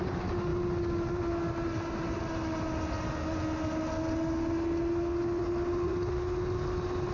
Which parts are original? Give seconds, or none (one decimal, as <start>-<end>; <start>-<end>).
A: 0.0-7.1